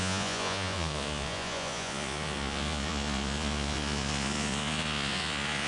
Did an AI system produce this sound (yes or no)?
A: yes